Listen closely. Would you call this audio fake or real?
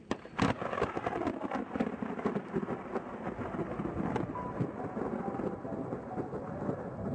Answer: real